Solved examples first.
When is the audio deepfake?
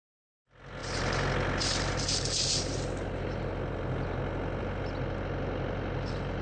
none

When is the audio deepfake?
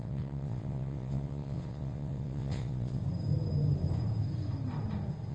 0.0-3.0 (vocoder, WaveNeXt)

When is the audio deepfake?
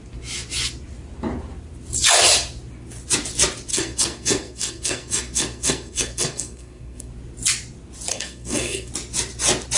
3.7-7.1 (codec, SNAC); 8.1-8.9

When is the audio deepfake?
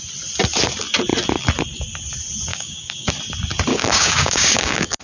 2.5-3.1 (codec, DAC); 3.7-5.0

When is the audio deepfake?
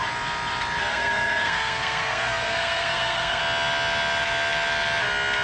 0.9-3.4 (codec, SNAC)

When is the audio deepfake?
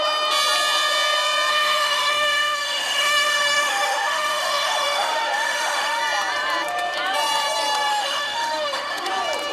1.5-6.0 (autoencoder, DAC-VAE); 7.9-9.1